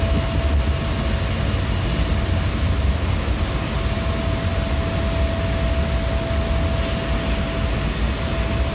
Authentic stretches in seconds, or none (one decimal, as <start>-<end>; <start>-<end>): 0.0-8.7